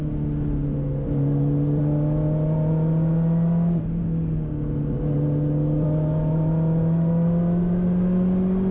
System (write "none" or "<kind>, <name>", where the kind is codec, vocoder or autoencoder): none